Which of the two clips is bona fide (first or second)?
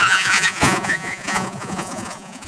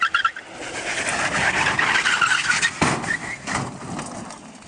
second